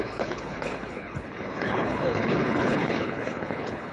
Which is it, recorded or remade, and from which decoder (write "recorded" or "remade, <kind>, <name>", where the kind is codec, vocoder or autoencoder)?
remade, codec, HILCodec